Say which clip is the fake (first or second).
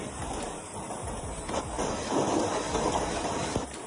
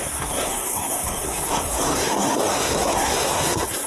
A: second